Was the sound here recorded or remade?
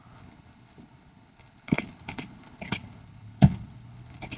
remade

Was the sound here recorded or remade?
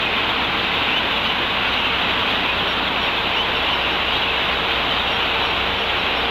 recorded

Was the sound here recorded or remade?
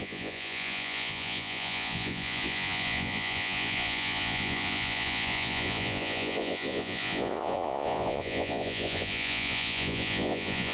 remade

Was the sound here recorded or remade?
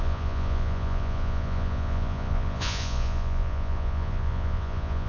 remade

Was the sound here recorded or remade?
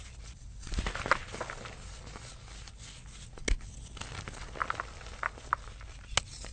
recorded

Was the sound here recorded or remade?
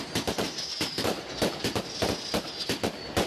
recorded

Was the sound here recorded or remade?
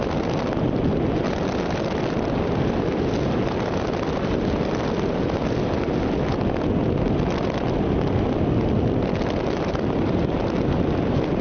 recorded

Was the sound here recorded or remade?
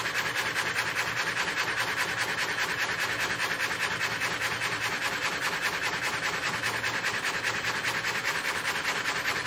recorded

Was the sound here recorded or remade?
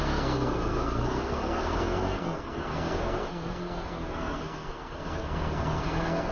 remade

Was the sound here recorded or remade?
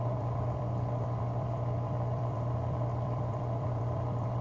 remade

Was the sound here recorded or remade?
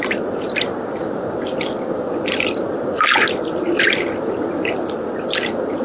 recorded